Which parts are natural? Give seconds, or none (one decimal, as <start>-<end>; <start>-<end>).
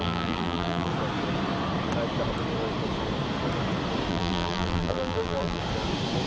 0.9-4.1; 5.6-6.3